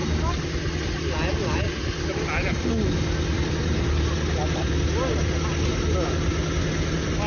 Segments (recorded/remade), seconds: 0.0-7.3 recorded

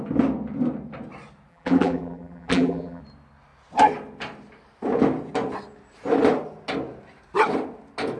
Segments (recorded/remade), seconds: 0.0-1.5 recorded; 1.5-3.0 remade; 3.0-8.2 recorded

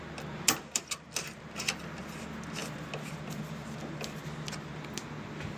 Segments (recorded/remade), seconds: 0.0-5.6 recorded

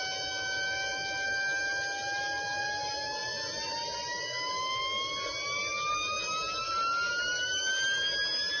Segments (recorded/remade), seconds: 0.0-8.6 recorded

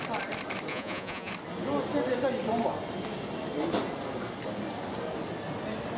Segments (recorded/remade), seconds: 0.0-0.7 recorded; 0.7-1.3 remade; 1.3-6.0 recorded

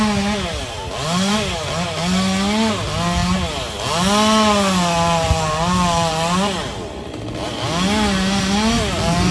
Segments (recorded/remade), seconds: 0.0-9.3 recorded

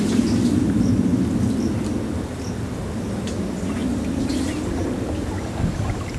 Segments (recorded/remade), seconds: 0.0-1.1 remade; 1.1-2.8 recorded; 2.8-3.8 remade; 3.8-5.7 recorded; 5.7-6.2 remade